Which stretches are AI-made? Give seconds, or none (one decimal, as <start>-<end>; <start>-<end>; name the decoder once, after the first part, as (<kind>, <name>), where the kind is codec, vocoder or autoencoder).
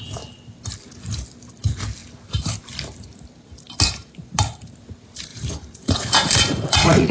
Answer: 5.3-7.1 (vocoder, Vocos)